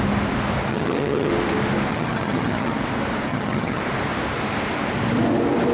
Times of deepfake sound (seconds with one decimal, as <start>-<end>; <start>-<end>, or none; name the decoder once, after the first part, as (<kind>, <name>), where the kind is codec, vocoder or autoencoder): 0.7-1.3 (vocoder, HiFi-GAN); 1.9-2.8; 3.3-3.8